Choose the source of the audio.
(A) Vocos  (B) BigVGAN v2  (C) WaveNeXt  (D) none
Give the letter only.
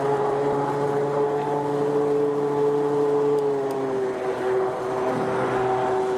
D